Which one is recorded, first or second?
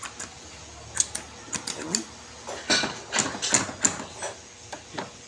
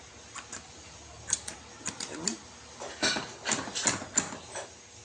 first